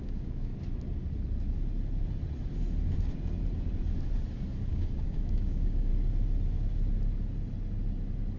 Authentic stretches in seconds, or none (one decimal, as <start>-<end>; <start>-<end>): 0.5-4.7; 5.9-8.4